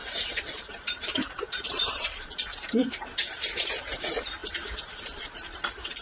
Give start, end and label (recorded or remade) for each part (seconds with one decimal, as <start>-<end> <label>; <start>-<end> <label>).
0.0-6.0 remade